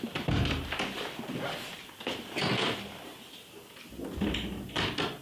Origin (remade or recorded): recorded